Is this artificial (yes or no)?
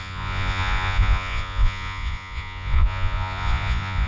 yes